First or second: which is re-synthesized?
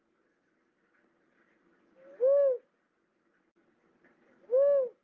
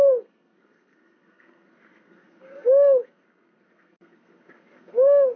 second